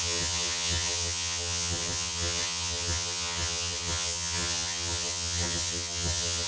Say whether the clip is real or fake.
fake